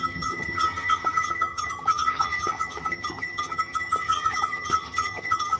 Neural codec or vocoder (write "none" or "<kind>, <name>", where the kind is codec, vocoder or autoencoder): vocoder, HiFi-GAN